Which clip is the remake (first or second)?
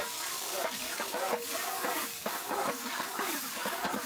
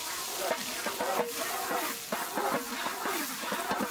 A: first